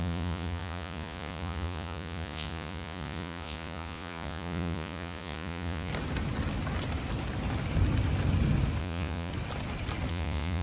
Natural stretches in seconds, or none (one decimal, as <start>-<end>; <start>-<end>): 5.9-8.8; 9.3-10.1